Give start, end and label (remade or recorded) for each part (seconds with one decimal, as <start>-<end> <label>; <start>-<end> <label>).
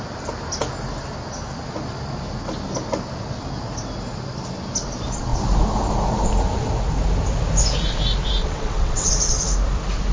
0.0-8.4 recorded; 8.4-9.1 remade; 9.1-10.1 recorded